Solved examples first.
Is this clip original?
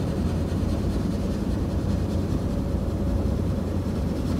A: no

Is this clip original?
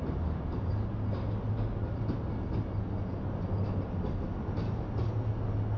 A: yes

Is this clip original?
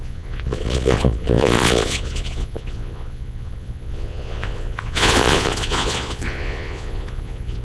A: no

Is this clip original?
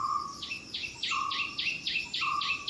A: yes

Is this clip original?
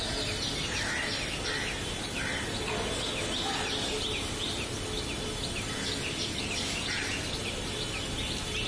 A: yes